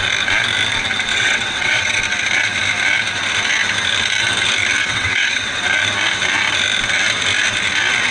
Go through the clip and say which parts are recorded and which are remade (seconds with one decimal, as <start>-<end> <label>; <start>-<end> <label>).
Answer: 0.0-1.1 recorded; 1.1-2.0 remade; 2.0-4.8 recorded; 4.8-5.6 remade; 5.6-8.1 recorded